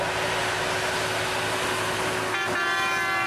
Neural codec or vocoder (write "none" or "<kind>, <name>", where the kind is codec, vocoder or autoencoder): none